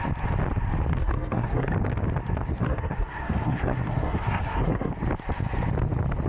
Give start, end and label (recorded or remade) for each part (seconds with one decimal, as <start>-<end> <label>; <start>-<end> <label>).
0.0-1.0 recorded; 1.0-1.7 remade; 1.7-2.6 recorded; 2.6-4.9 remade; 4.9-6.3 recorded